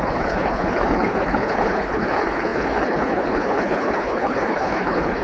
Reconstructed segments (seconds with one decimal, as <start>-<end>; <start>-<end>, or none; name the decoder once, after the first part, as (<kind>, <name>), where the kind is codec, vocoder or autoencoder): 0.0-5.2 (codec, HILCodec)